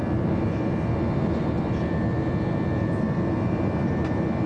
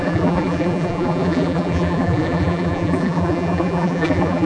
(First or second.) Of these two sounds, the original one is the first